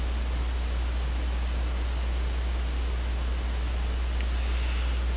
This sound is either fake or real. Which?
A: real